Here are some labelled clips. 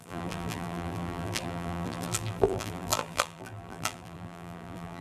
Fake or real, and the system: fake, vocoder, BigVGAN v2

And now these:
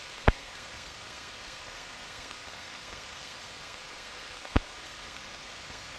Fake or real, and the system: fake, codec, SNAC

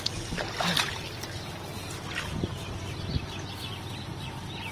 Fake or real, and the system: real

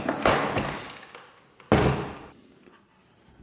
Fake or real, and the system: real